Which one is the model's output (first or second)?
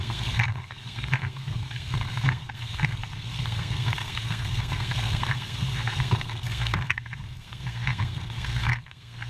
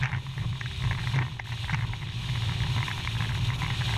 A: first